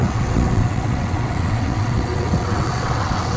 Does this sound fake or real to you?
fake